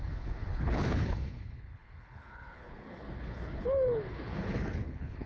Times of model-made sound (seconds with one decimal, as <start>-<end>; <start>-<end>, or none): 0.0-5.3

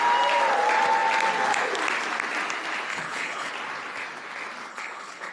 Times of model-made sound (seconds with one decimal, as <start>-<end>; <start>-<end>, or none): 2.9-3.5; 4.7-5.3

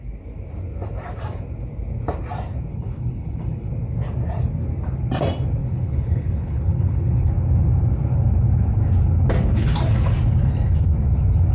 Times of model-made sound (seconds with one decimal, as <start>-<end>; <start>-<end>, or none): 2.7-3.7; 5.6-7.3

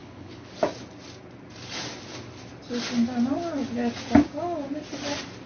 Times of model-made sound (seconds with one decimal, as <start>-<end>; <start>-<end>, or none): 0.0-0.5

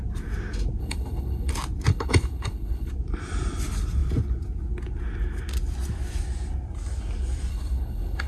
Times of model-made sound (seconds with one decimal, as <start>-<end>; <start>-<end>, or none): 0.8-1.5; 1.9-2.9; 7.5-8.3

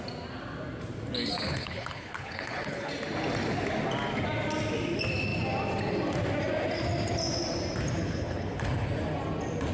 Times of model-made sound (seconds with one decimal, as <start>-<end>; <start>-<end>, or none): 1.5-2.9; 8.0-8.9